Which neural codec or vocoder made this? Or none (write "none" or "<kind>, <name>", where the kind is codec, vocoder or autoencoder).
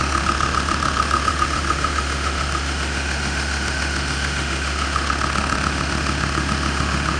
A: autoencoder, DAC-VAE